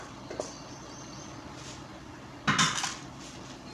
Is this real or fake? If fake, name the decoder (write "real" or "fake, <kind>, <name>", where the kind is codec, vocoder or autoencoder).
real